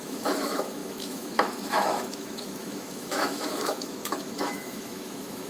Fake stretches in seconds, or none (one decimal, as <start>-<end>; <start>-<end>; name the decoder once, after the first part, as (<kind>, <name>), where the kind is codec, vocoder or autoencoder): 0.0-5.5 (autoencoder, DAC-VAE)